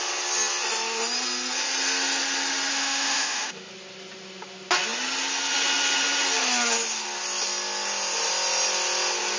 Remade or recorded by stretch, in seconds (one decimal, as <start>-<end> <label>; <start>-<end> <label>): 0.0-2.7 recorded; 2.7-3.7 remade; 3.7-9.4 recorded